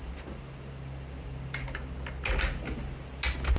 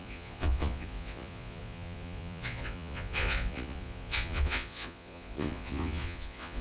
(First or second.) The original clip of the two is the first